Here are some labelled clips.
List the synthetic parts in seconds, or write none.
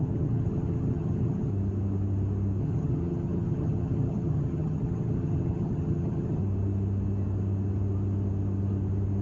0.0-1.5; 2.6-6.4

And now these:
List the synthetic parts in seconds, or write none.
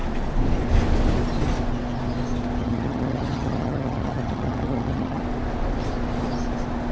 2.6-5.2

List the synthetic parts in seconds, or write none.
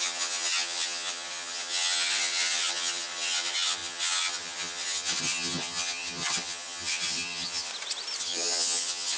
0.0-7.7; 8.2-9.2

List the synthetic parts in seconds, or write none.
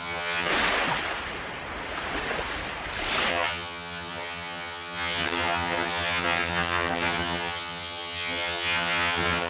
0.0-0.5; 3.3-9.5